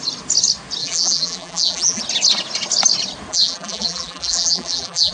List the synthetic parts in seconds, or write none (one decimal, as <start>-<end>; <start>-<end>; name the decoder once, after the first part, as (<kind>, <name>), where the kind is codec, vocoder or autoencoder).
0.8-2.0 (vocoder, BigVGAN v2); 3.3-5.1